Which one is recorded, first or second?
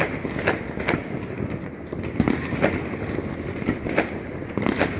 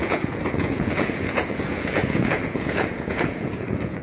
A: first